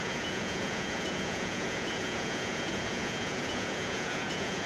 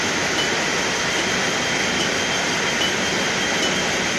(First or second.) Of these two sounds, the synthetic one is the first